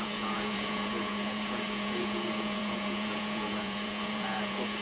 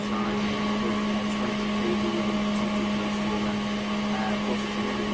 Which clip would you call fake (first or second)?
first